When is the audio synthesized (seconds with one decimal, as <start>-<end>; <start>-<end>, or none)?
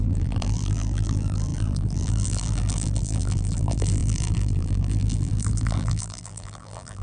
0.0-7.0